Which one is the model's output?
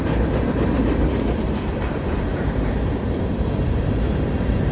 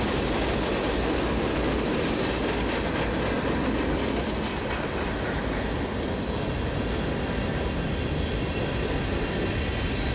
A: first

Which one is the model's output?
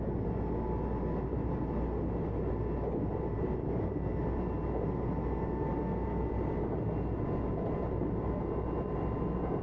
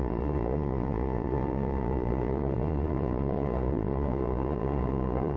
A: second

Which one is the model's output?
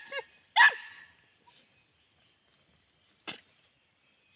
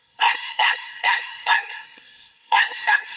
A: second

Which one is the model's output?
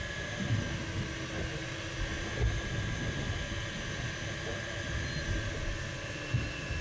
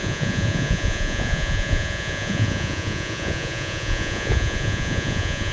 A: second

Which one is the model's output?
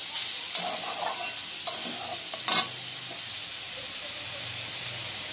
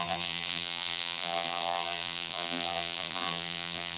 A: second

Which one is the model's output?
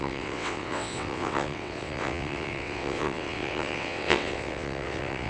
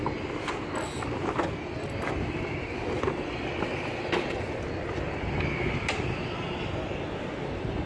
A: first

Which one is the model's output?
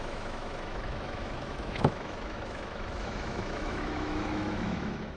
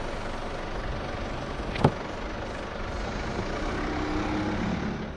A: first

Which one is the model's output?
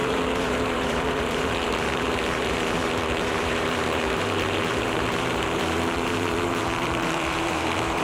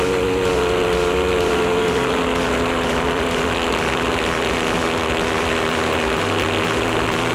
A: first